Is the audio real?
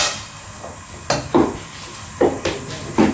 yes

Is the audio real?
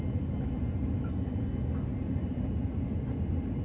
yes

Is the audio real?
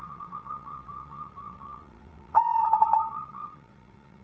no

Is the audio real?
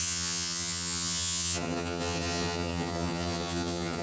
no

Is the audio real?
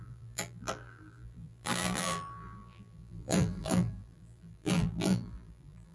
no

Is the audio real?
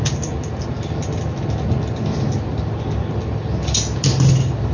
yes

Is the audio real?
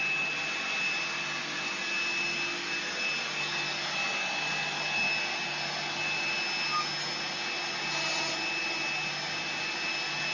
yes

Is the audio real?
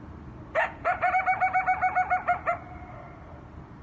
yes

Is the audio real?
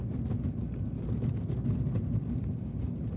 yes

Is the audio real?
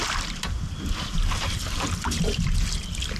yes